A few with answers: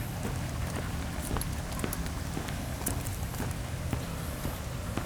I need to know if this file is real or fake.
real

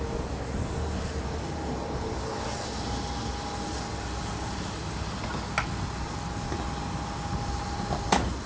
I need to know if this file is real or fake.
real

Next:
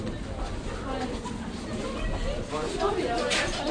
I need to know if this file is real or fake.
real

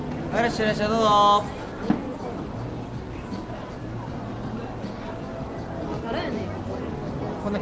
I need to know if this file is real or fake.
real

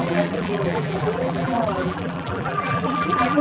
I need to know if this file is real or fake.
fake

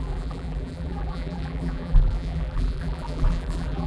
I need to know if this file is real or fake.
fake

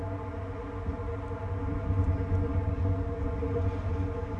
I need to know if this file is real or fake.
real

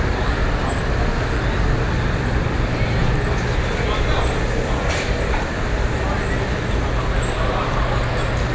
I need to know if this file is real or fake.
real